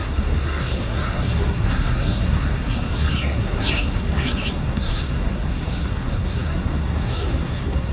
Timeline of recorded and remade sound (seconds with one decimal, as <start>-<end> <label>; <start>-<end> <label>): 0.0-7.9 remade